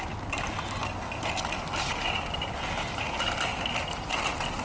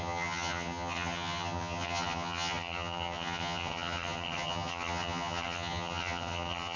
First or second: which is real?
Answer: first